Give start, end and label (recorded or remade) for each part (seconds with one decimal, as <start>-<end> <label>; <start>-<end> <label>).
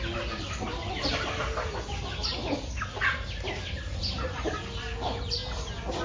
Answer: 0.0-6.0 recorded